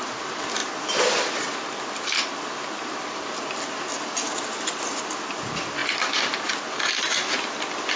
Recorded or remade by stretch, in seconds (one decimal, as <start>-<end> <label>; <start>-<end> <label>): 0.0-8.0 recorded